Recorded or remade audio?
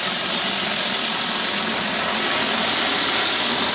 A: recorded